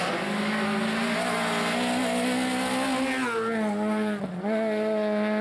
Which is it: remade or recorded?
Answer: recorded